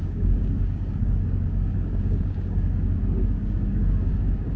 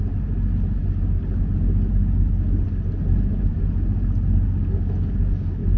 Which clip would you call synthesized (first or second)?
first